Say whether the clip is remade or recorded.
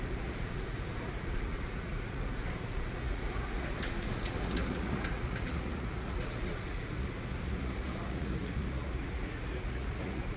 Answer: remade